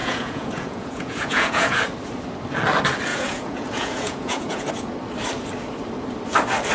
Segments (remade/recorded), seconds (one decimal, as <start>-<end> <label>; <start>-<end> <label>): 0.0-1.8 remade; 1.8-3.1 recorded; 3.1-4.7 remade; 4.7-6.7 recorded